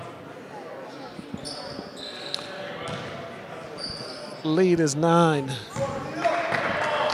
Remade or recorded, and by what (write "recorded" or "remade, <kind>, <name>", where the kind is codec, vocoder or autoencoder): recorded